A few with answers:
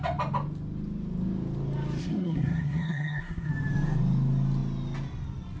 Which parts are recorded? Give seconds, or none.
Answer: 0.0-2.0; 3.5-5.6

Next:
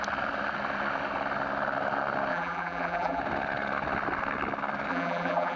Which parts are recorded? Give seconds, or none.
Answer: 0.0-2.3; 3.2-4.9

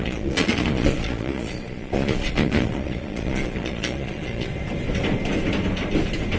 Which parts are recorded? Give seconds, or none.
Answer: 4.5-6.4

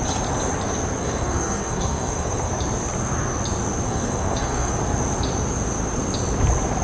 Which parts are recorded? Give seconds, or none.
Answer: 0.0-1.0; 2.5-3.9; 4.7-6.8

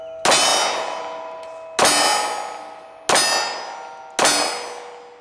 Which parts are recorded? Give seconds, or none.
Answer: 0.0-5.2

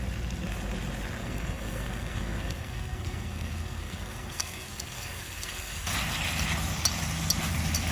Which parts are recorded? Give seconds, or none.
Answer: 0.0-1.2; 5.9-7.9

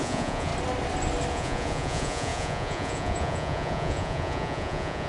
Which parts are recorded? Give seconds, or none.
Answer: 0.5-1.3

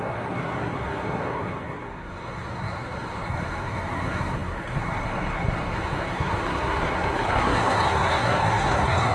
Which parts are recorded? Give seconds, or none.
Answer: none